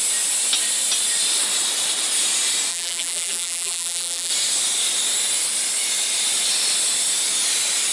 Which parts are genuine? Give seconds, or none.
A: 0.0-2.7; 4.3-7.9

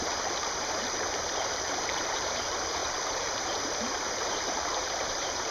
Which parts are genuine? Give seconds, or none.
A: none

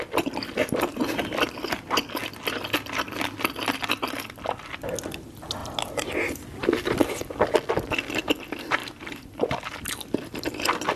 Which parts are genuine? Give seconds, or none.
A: 0.0-8.8; 9.7-11.0

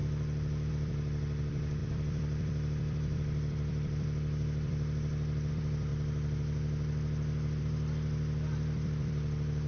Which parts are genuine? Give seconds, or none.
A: 0.0-0.7; 5.9-7.6

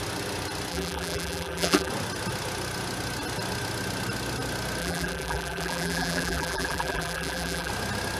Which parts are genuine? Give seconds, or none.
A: 0.0-0.7; 1.9-4.8; 7.7-8.2